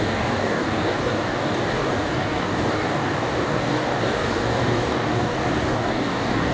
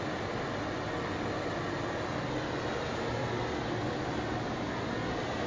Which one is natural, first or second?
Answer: second